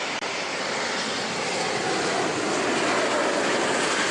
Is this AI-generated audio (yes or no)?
no